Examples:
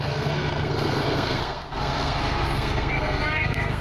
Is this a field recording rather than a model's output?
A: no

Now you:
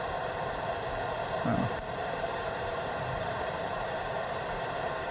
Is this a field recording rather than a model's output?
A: no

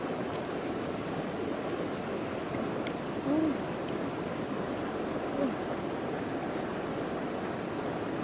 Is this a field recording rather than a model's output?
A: yes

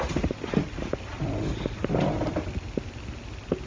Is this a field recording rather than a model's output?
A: yes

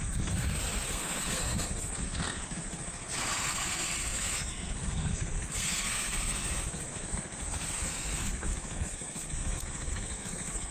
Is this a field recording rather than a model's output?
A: no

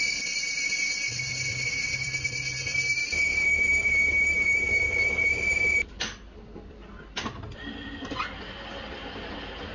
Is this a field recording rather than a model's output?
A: no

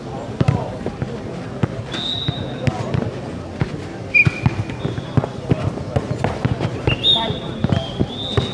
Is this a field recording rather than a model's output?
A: yes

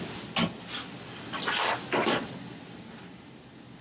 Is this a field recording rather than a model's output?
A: yes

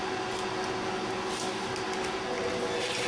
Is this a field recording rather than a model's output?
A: yes